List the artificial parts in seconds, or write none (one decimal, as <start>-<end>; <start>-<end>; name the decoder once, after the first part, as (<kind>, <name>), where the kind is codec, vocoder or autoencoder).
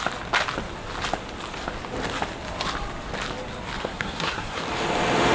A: 3.8-4.6 (codec, SNAC)